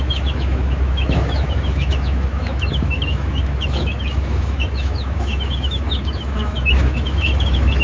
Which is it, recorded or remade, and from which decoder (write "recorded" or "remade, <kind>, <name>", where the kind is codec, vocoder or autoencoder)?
remade, autoencoder, DAC-VAE